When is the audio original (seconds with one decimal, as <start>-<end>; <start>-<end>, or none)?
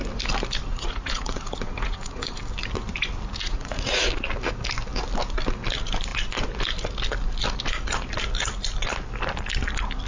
0.0-0.7; 2.4-3.4; 4.1-10.1